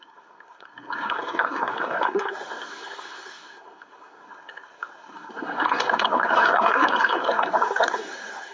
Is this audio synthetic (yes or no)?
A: yes